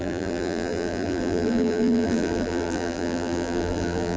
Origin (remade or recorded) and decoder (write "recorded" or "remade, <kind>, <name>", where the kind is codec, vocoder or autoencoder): remade, vocoder, BigVGAN v2